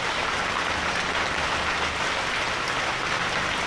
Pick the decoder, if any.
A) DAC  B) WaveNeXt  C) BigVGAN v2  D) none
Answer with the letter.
D